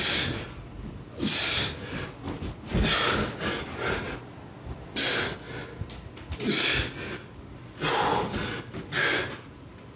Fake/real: real